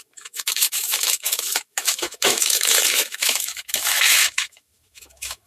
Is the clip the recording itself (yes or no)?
no